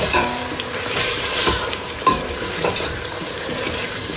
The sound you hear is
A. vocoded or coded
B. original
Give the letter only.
A